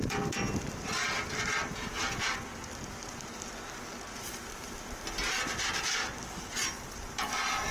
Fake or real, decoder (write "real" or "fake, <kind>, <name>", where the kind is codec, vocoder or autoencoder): real